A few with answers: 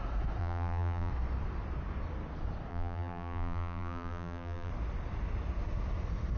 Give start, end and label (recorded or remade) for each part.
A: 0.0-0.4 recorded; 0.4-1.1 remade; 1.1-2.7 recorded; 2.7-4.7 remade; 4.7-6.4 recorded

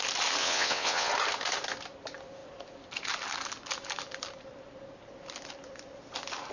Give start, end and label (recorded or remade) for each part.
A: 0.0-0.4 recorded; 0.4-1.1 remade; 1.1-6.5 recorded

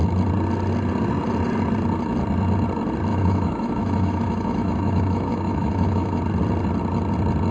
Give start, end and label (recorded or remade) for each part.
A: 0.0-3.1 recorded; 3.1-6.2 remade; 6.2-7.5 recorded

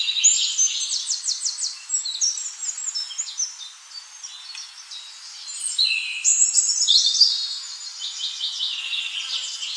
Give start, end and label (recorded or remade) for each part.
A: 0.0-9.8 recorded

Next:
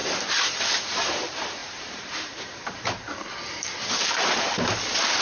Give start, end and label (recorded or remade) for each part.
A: 0.0-0.7 remade; 0.7-1.6 recorded; 1.6-3.7 remade; 3.7-5.2 recorded

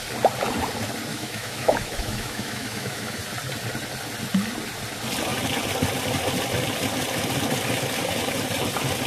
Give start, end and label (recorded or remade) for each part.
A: 0.0-1.1 recorded; 1.1-3.2 remade; 3.2-9.1 recorded

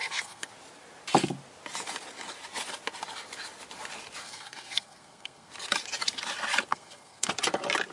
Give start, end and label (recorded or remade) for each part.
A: 0.0-0.5 remade; 0.5-4.2 recorded; 4.2-5.5 remade; 5.5-6.7 recorded; 6.7-7.3 remade; 7.3-7.9 recorded

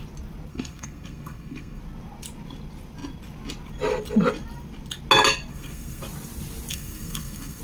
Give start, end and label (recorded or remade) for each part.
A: 0.0-0.5 recorded; 0.5-1.8 remade; 1.8-5.5 recorded; 5.5-6.0 remade; 6.0-6.7 recorded; 6.7-7.6 remade